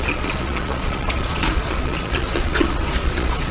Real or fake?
fake